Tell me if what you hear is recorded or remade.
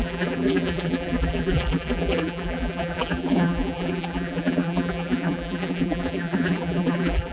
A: remade